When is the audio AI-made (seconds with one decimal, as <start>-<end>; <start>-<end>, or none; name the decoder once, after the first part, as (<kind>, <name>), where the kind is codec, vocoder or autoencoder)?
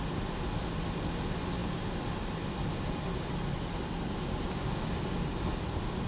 none